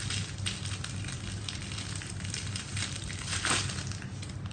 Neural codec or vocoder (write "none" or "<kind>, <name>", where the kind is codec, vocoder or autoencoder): none